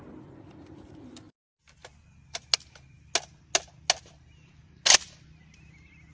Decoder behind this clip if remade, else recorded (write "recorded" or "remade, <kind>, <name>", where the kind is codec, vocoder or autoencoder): recorded